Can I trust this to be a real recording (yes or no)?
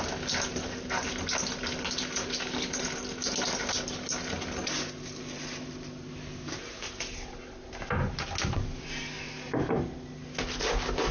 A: yes